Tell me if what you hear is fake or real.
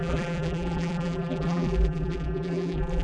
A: fake